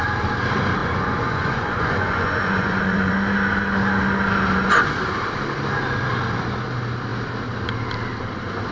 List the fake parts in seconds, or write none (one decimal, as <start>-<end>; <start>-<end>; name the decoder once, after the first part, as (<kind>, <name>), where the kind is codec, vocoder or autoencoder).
0.8-3.1 (vocoder, Vocos)